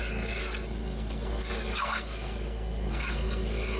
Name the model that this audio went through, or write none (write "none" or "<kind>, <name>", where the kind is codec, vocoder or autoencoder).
codec, SNAC